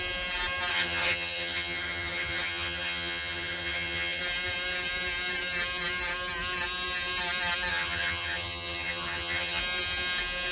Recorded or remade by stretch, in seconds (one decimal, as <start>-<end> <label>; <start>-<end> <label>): 0.0-0.7 recorded; 0.7-4.2 remade; 4.2-7.7 recorded; 7.7-9.6 remade; 9.6-10.5 recorded